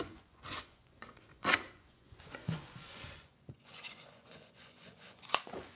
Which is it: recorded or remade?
remade